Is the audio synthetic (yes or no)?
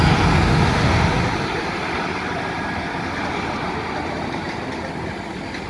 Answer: no